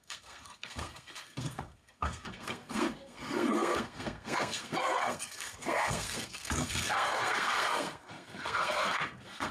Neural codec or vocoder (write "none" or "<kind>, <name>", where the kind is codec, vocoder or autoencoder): codec, SNAC